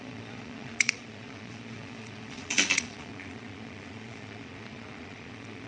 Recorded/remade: remade